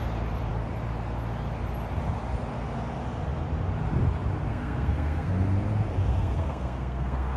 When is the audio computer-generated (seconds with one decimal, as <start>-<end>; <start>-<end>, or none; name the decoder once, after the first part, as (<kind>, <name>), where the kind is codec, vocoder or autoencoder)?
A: 4.5-5.3 (codec, SNAC); 6.1-7.4